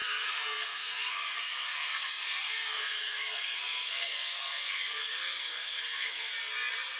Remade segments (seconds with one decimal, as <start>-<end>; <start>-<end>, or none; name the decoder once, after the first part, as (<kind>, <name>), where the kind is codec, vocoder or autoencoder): 0.0-6.3 (codec, SNAC)